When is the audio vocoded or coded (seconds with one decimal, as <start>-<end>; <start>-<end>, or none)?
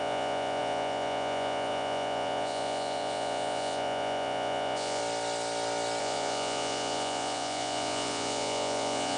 0.0-5.0; 6.0-9.2